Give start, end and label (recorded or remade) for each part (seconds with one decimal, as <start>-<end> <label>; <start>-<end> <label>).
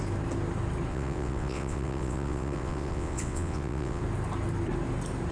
0.0-0.9 recorded; 0.9-4.0 remade; 4.0-5.3 recorded